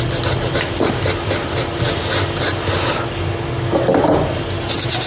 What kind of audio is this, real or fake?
real